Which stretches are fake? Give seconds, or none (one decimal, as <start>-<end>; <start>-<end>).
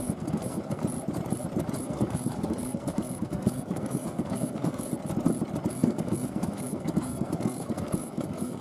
0.0-0.8; 1.8-4.9; 5.7-8.6